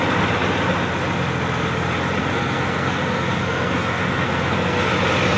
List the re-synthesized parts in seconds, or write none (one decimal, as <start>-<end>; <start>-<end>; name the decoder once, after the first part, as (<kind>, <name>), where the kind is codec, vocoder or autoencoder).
2.2-4.9 (codec, SNAC)